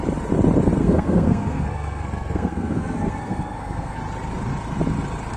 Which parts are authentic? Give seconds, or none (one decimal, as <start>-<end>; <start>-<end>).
0.0-0.8; 4.0-5.4